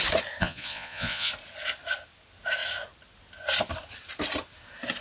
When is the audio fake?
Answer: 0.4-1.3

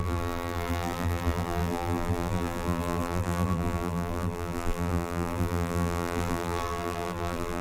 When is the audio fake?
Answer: 0.0-7.6